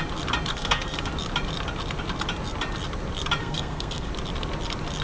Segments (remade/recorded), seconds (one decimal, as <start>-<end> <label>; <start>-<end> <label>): 0.0-0.5 recorded; 0.5-1.1 remade; 1.1-3.4 recorded; 3.4-4.1 remade; 4.1-5.0 recorded